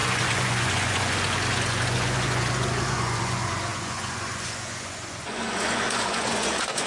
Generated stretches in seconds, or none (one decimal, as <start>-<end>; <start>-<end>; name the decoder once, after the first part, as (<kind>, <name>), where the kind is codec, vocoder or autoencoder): 0.0-6.9 (vocoder, Vocos)